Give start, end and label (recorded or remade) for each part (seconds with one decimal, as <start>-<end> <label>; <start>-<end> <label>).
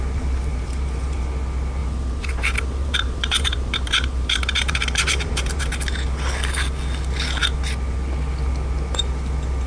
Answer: 0.0-0.5 recorded; 0.5-1.2 remade; 1.2-1.8 recorded; 1.8-5.7 remade; 5.7-9.7 recorded